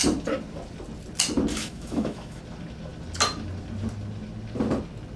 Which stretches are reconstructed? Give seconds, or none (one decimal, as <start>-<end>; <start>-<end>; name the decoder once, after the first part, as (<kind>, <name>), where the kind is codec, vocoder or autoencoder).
1.5-2.4 (autoencoder, DAC-VAE)